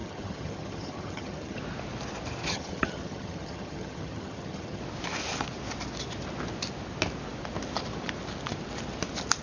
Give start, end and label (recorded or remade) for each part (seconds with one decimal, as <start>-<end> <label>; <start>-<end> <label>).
0.0-1.6 remade; 1.6-2.4 recorded; 2.4-4.8 remade; 4.8-9.4 recorded

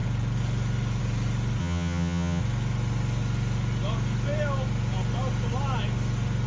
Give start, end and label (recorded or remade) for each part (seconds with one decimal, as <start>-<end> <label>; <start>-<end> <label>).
0.0-1.6 recorded; 1.6-2.4 remade; 2.4-6.5 recorded